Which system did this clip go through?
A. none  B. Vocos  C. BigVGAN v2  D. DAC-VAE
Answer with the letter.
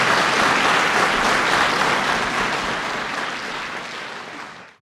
A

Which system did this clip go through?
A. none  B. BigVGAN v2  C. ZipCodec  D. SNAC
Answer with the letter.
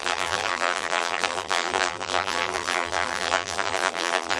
B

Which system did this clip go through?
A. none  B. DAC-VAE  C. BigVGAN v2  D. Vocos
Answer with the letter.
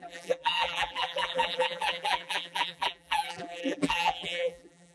C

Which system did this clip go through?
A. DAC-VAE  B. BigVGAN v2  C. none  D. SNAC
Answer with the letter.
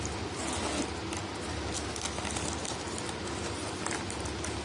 C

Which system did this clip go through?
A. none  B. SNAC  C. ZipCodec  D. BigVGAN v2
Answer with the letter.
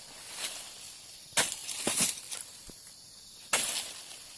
A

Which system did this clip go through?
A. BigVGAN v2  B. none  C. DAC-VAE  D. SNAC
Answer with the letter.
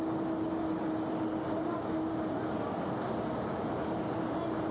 B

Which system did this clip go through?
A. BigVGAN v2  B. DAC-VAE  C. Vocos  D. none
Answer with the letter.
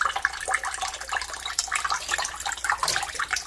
D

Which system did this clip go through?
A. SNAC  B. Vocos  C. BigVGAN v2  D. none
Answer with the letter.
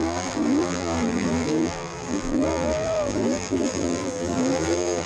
C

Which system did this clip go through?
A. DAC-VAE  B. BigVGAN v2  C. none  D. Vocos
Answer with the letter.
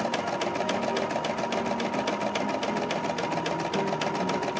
C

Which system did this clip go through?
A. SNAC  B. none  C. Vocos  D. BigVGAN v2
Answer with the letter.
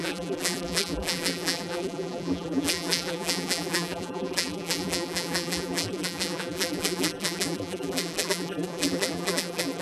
D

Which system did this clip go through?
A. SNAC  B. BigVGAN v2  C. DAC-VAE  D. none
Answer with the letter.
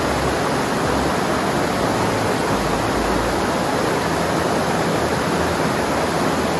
D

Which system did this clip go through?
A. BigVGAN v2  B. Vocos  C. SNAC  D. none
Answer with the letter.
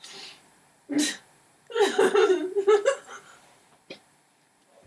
A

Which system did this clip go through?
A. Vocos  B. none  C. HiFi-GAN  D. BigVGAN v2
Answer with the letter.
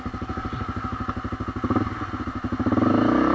B